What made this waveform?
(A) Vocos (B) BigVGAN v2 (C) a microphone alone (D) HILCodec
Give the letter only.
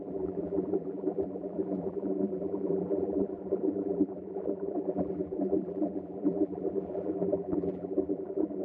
B